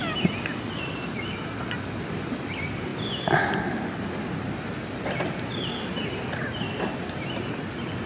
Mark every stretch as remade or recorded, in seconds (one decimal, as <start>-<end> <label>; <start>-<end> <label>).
0.0-8.1 recorded